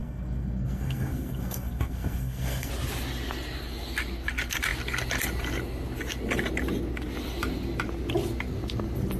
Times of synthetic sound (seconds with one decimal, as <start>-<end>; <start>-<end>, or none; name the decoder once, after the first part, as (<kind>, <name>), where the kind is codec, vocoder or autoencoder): 0.0-2.7 (codec, SNAC)